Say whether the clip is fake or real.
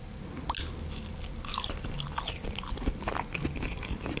real